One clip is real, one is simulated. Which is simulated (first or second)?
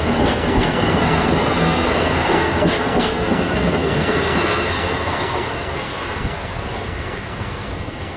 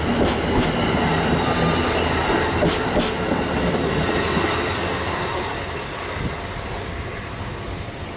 first